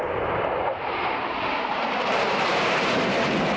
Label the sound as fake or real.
fake